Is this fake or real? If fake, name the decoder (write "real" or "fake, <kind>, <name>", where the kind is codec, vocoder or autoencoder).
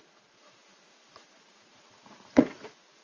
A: fake, vocoder, Vocos